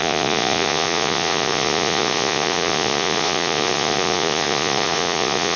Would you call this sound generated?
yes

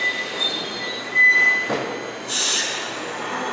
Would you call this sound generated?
no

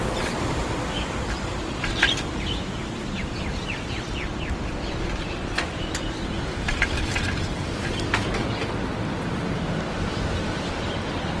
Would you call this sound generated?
yes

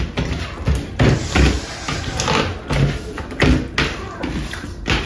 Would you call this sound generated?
no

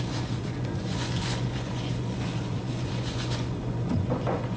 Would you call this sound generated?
yes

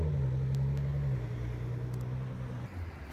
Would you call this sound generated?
no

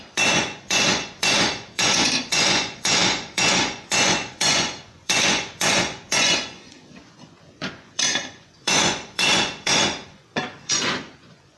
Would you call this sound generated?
yes